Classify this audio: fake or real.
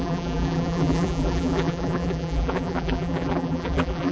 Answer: fake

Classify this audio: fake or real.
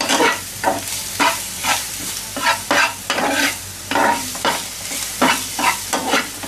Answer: fake